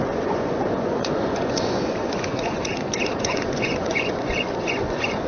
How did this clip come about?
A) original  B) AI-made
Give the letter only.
B